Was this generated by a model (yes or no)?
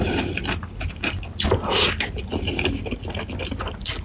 no